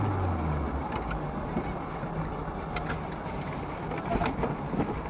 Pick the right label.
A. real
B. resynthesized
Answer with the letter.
A